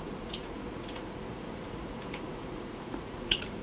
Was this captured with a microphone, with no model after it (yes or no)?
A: no